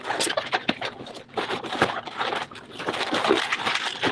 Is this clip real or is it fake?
real